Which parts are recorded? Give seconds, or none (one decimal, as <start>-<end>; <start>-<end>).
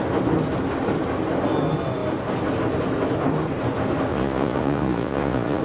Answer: 0.0-4.1